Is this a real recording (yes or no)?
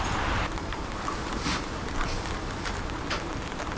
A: no